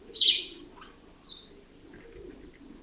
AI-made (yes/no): no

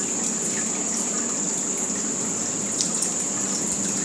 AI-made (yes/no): no